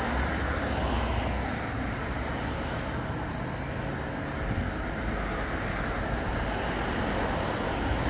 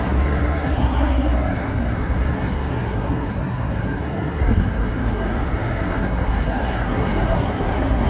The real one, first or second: first